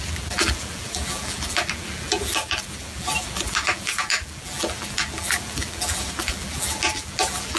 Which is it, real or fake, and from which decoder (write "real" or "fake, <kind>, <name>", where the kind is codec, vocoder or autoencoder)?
fake, vocoder, BigVGAN v2